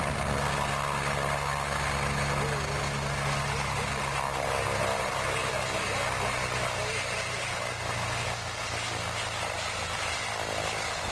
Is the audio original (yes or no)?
yes